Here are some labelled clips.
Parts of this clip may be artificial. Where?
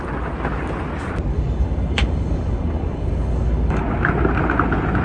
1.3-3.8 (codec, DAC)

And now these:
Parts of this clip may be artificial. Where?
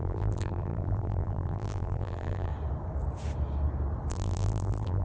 0.0-2.5 (vocoder, BigVGAN v2); 4.1-5.0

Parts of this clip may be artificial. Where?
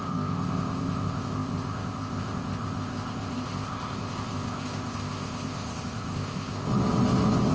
0.0-6.7 (codec, ZipCodec)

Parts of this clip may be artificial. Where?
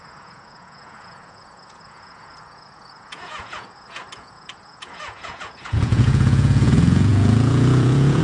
0.0-8.2 (vocoder, Vocos)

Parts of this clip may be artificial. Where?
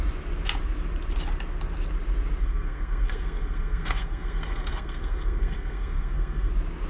2.4-6.5 (codec, SNAC)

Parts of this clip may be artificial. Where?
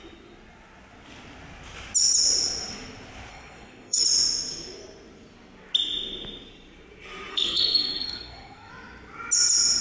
3.3-4.0 (codec, SNAC); 7.3-8.7